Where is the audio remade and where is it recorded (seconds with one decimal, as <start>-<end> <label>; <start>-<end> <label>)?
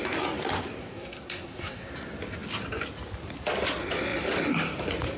0.0-0.8 recorded; 0.8-1.9 remade; 1.9-5.2 recorded